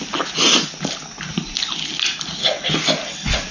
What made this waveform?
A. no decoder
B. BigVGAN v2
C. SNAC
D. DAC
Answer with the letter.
A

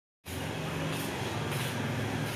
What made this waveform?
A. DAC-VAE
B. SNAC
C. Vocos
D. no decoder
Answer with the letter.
D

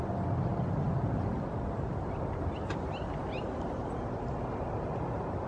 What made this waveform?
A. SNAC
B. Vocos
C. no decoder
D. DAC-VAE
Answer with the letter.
C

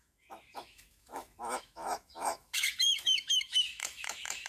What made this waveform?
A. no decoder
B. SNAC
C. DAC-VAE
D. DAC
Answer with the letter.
C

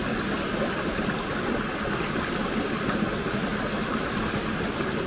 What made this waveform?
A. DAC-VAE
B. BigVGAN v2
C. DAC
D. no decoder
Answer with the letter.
D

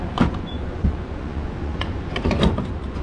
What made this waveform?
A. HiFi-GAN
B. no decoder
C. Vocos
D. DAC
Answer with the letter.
C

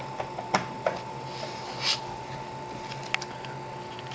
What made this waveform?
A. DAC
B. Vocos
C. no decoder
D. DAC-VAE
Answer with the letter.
C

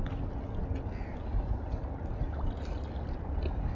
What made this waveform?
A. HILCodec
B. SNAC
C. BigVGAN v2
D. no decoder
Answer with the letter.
D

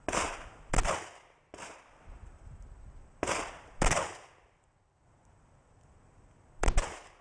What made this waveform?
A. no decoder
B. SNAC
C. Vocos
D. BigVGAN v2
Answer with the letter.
A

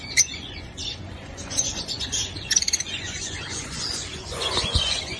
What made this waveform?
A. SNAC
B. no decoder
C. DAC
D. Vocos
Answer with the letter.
D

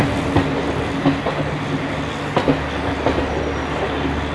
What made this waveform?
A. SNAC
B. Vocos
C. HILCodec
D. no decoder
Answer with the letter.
D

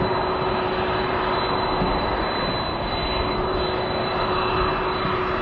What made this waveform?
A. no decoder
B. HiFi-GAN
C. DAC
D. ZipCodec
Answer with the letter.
A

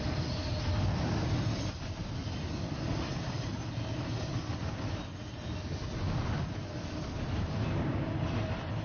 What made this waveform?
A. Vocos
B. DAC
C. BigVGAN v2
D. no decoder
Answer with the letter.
D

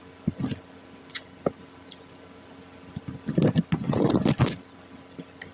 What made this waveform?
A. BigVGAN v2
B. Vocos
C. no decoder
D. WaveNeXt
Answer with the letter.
C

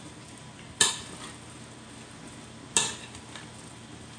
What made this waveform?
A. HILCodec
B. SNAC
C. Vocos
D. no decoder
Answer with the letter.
D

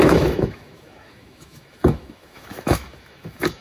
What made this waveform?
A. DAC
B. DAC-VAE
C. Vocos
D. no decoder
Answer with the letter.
B